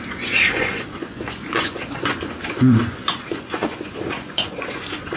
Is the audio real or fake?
fake